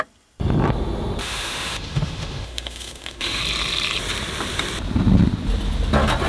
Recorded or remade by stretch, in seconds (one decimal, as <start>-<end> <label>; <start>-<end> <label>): 0.0-1.2 recorded; 1.2-3.4 remade; 3.4-6.3 recorded